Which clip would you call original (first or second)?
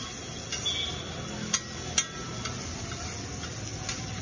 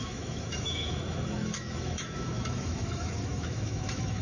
first